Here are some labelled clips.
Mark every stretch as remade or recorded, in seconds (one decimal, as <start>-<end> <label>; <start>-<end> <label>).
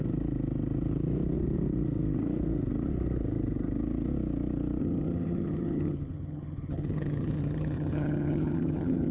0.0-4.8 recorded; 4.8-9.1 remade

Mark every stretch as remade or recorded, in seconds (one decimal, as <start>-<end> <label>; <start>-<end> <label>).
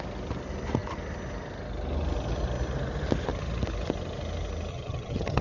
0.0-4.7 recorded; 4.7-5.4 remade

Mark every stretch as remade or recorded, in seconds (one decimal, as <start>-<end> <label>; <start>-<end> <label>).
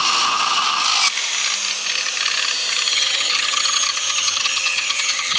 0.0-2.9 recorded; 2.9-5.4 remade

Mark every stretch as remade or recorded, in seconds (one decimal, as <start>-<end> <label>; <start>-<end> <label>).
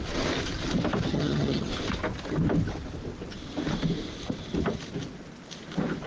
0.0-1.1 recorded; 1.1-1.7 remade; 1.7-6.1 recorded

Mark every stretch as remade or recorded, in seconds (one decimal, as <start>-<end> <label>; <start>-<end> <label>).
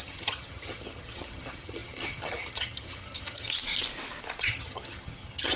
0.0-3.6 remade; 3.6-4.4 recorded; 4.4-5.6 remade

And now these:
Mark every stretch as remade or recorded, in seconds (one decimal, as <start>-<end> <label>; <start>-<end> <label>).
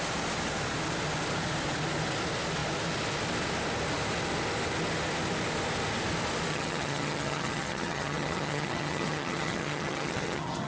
0.0-6.5 recorded; 6.5-10.7 remade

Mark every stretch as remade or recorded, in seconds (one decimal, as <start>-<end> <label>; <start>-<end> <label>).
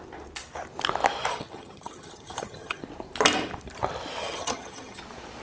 0.0-1.3 recorded; 1.3-2.8 remade; 2.8-4.2 recorded; 4.2-5.0 remade; 5.0-5.4 recorded